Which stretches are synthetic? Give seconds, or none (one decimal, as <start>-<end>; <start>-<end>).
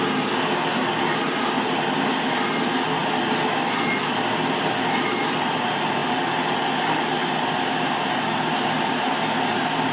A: none